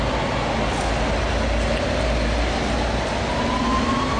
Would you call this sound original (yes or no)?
yes